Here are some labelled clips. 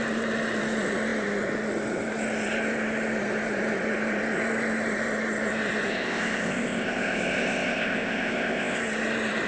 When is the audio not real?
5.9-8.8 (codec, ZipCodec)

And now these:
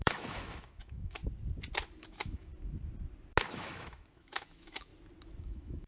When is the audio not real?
0.0-1.2 (autoencoder, DAC-VAE); 2.0-2.5; 3.5-4.9; 5.4-5.9

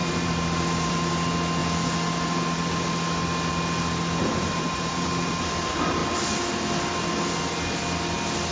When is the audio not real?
0.0-1.1 (vocoder, BigVGAN v2); 4.3-5.3

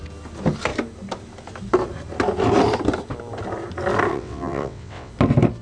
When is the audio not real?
4.1-5.1 (vocoder, WaveNeXt)

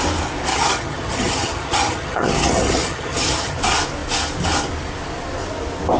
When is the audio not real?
0.5-3.6 (vocoder, HiFi-GAN)